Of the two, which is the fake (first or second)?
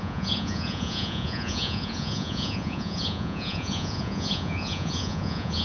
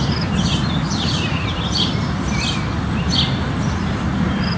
first